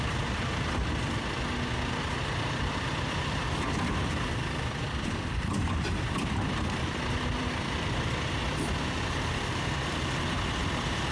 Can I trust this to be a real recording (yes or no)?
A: no